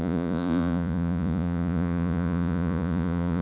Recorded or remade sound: remade